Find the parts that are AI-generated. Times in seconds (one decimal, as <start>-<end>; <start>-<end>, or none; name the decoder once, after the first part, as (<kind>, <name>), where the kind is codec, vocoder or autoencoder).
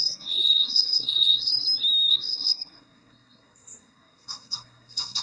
0.0-1.5 (codec, SNAC); 2.1-5.2